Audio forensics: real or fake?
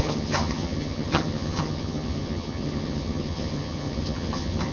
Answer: fake